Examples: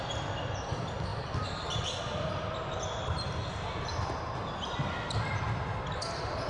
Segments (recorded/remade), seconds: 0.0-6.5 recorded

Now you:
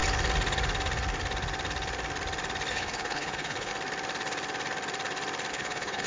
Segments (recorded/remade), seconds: 0.0-2.7 recorded; 2.7-3.7 remade; 3.7-5.5 recorded; 5.5-6.1 remade

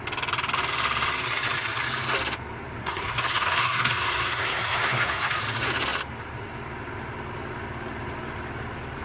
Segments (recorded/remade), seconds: 0.0-2.8 recorded; 2.8-5.4 remade; 5.4-9.0 recorded

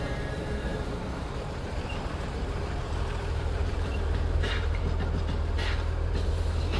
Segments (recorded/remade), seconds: 0.0-0.7 recorded; 0.7-4.8 remade; 4.8-6.8 recorded

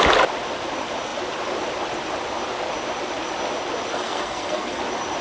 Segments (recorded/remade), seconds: 0.0-3.9 recorded; 3.9-4.8 remade; 4.8-5.2 recorded

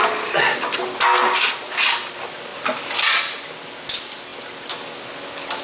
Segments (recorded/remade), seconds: 0.0-5.6 recorded

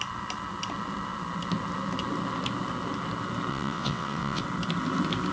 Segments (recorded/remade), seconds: 0.0-3.5 recorded; 3.5-4.4 remade; 4.4-5.3 recorded